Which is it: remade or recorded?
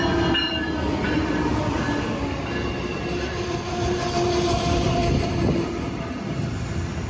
recorded